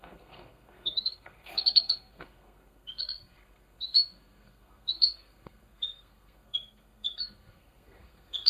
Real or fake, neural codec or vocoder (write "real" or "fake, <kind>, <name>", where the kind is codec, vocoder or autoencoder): fake, codec, SNAC